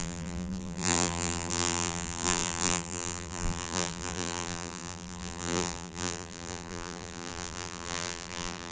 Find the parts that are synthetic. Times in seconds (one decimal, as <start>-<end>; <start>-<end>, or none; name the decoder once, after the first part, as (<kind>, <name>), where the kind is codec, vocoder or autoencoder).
0.0-8.7 (vocoder, BigVGAN v2)